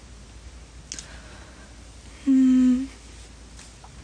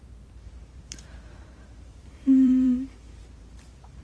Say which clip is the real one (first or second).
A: first